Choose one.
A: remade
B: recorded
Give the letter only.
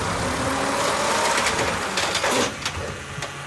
B